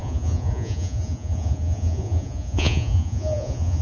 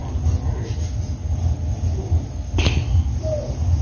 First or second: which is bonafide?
second